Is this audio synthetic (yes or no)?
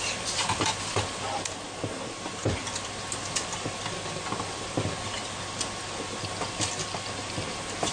no